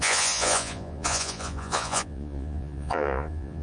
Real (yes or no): no